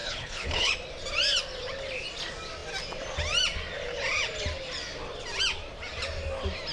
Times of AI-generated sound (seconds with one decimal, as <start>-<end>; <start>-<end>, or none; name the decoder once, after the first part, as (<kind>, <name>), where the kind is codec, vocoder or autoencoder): 0.0-0.7 (codec, HILCodec)